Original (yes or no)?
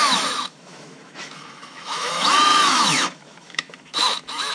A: no